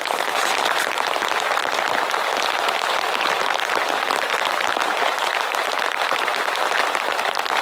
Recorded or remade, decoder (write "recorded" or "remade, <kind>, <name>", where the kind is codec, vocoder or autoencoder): remade, vocoder, BigVGAN v2